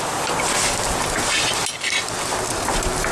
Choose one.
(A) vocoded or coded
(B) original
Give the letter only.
B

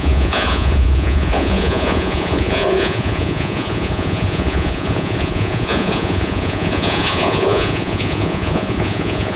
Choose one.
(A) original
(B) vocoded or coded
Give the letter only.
B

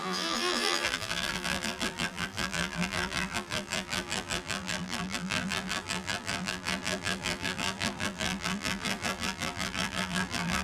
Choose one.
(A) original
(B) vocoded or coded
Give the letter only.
B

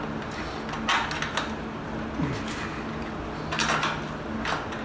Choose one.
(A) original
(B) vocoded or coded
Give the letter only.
A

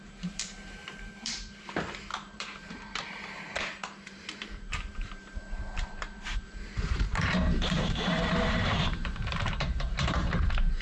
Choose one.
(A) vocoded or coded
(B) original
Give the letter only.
A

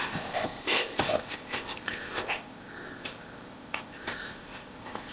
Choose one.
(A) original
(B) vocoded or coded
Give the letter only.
B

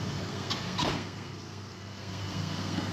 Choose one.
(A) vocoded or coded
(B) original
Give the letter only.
A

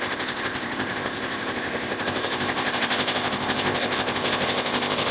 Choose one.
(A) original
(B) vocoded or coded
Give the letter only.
B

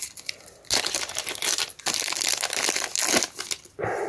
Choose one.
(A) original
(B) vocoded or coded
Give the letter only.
A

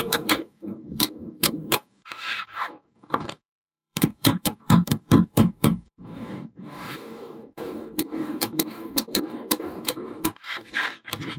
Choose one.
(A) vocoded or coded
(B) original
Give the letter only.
A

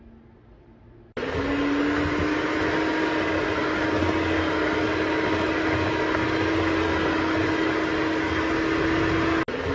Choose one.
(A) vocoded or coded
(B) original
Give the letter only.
B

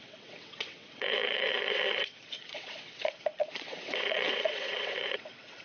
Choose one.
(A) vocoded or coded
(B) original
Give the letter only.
A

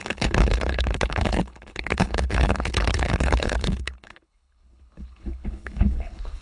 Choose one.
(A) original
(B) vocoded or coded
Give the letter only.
B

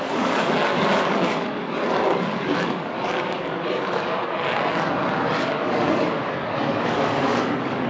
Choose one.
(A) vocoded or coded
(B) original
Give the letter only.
A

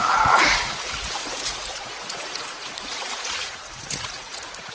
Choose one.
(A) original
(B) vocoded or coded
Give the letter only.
B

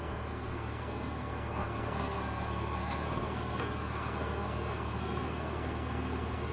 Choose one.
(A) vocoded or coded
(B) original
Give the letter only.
A